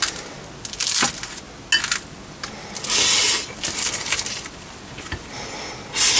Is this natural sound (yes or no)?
yes